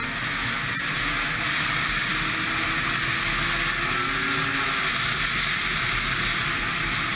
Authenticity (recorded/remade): recorded